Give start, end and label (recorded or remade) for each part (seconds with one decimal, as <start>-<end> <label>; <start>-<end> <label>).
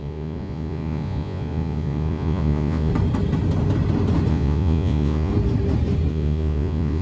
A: 0.0-2.9 remade; 2.9-4.3 recorded; 4.3-5.3 remade; 5.3-6.1 recorded; 6.1-7.0 remade